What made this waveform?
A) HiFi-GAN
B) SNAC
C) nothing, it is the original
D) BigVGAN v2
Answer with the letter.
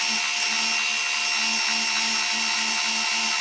C